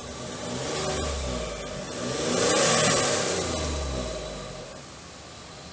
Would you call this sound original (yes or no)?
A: yes